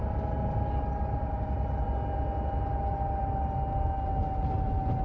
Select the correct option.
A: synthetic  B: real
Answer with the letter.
B